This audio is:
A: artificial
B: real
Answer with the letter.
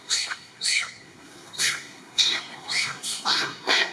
A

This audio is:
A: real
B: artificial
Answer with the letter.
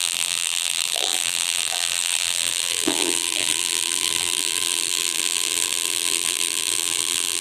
B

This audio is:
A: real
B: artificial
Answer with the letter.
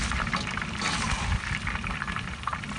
A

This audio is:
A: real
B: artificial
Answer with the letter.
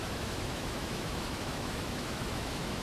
B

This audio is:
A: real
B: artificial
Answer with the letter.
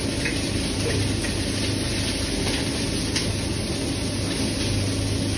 A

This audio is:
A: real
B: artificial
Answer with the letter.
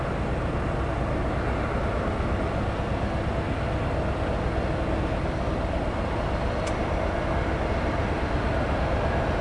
A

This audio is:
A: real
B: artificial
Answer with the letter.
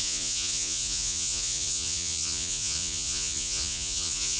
B